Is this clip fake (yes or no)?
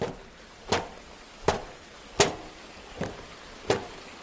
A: no